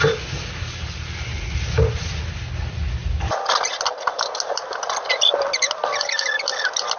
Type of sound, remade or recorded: recorded